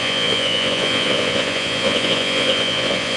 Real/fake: fake